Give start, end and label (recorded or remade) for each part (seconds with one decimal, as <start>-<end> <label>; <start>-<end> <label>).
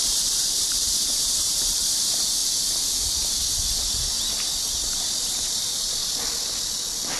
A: 0.0-2.4 remade; 2.4-4.7 recorded; 4.7-6.0 remade; 6.0-7.2 recorded